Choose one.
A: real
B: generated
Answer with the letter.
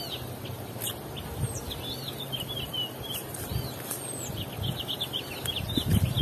A